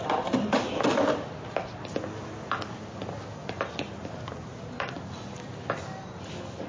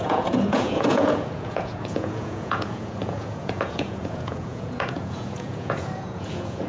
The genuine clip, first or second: first